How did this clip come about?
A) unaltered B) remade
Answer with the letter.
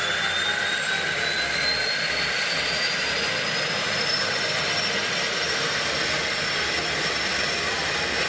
A